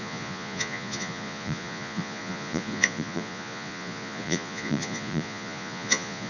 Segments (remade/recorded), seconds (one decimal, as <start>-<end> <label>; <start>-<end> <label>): 0.0-6.3 remade